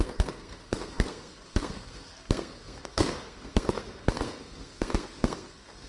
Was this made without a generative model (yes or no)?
no